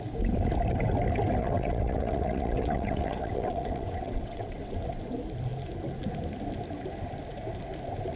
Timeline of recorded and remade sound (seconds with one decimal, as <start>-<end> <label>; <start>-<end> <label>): 0.0-1.4 recorded; 1.4-5.0 remade; 5.0-8.2 recorded